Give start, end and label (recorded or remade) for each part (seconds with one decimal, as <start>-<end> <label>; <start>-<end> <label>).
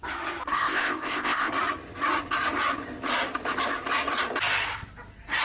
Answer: 0.0-0.5 recorded; 0.5-1.5 remade; 1.5-5.4 recorded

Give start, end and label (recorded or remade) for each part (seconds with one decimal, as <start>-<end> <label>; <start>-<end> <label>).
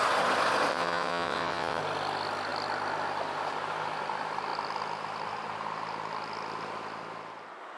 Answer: 0.0-0.7 recorded; 0.7-1.8 remade; 1.8-7.8 recorded